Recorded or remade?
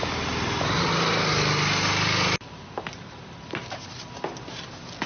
recorded